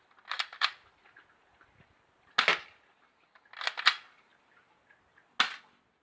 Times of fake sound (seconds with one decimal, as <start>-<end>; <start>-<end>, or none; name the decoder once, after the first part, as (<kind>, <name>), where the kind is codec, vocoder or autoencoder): none